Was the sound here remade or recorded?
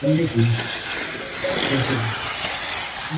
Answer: recorded